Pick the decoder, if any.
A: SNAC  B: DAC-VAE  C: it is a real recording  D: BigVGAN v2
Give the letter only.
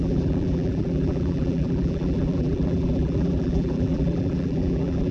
D